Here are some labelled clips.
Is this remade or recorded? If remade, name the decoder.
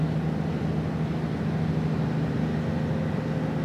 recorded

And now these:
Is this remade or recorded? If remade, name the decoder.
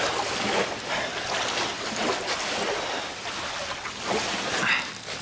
recorded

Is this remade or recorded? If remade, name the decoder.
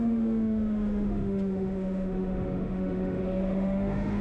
remade, autoencoder, DAC-VAE